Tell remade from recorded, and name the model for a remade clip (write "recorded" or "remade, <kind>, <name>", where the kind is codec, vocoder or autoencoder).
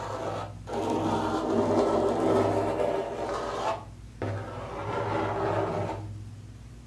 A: recorded